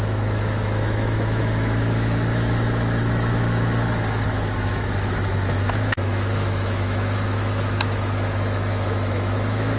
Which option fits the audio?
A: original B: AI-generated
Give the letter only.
B